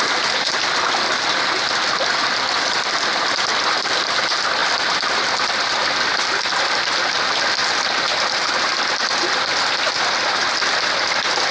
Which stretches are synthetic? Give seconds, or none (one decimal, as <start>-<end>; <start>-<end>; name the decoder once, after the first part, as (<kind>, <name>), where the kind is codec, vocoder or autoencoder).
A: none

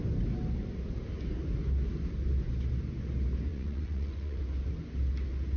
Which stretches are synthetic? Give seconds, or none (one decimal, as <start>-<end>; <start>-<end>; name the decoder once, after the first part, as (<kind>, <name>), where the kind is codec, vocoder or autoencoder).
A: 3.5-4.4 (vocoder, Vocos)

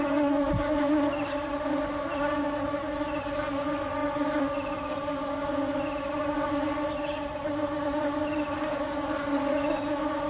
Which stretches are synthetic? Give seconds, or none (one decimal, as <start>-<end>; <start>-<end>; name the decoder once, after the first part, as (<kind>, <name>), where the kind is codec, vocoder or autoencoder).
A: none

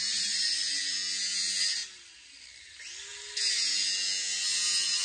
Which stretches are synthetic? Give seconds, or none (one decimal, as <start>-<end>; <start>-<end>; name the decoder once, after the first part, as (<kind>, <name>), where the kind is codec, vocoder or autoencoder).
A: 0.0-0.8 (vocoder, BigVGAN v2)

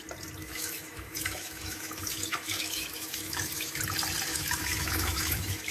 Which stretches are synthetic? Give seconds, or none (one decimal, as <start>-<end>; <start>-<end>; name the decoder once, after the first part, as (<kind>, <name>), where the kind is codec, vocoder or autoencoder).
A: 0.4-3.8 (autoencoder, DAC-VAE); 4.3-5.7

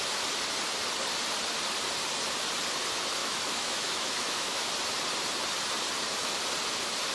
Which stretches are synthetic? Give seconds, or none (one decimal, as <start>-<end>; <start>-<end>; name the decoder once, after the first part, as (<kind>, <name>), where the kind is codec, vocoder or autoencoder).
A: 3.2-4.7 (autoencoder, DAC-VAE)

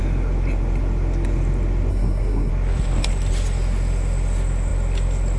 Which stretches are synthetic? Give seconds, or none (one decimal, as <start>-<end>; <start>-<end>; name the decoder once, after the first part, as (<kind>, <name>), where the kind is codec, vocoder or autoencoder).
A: 1.9-2.5 (codec, SNAC)